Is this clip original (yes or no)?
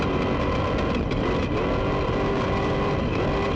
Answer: yes